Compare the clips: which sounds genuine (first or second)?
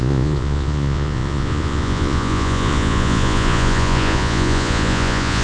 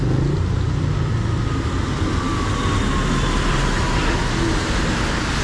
second